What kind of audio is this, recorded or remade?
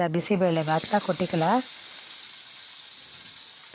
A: recorded